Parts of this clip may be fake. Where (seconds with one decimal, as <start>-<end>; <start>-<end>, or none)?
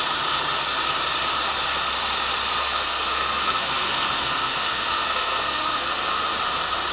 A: 2.6-5.9